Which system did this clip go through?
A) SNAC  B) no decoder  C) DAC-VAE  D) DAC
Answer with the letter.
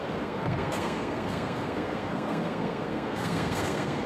A